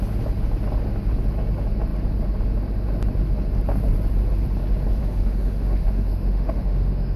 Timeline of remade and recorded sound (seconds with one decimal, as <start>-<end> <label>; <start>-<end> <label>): 0.0-5.0 recorded; 5.0-7.2 remade